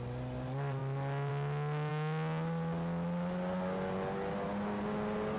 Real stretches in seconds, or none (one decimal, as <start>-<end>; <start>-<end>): 0.0-5.4